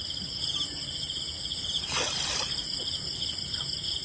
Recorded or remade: recorded